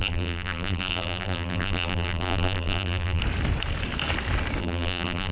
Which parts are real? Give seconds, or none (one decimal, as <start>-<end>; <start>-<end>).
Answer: 3.2-4.6